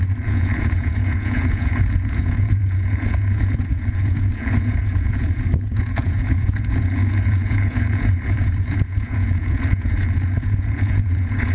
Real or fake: fake